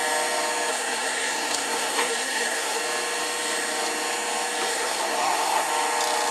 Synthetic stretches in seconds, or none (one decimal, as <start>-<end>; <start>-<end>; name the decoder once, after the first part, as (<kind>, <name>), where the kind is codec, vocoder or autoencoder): 0.7-2.8 (codec, SNAC); 4.7-5.7